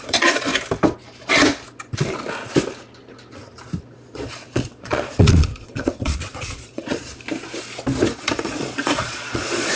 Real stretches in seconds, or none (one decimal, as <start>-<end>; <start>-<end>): 0.5-3.9; 7.1-8.1